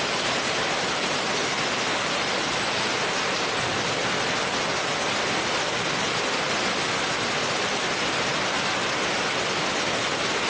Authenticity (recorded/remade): recorded